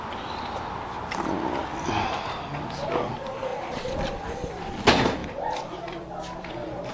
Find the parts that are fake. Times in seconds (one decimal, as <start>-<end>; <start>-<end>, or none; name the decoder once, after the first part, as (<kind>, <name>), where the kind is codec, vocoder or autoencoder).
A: 1.6-2.2 (vocoder, BigVGAN v2); 3.5-4.8; 5.2-6.5